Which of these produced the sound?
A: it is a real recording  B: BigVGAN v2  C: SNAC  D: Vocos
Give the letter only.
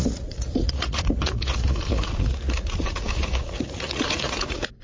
D